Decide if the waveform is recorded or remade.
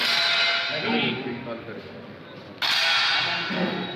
recorded